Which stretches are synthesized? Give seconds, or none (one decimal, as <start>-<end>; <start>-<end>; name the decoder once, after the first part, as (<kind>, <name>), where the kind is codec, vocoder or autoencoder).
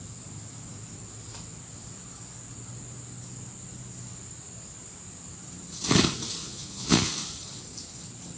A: 6.4-7.1 (vocoder, Vocos)